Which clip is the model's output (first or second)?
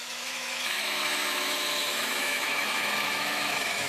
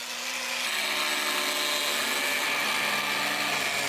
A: first